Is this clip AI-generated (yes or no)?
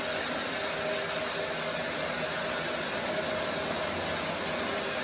no